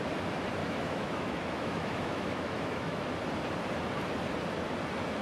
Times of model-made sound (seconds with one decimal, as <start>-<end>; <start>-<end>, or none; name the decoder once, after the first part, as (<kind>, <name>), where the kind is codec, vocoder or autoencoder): 0.6-3.1 (autoencoder, DAC-VAE)